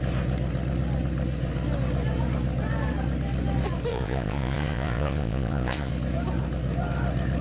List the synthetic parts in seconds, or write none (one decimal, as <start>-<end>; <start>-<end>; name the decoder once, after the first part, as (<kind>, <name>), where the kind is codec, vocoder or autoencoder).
3.9-5.9 (vocoder, Vocos)